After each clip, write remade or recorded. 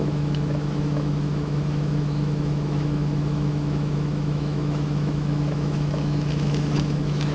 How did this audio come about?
remade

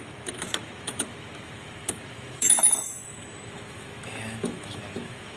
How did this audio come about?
remade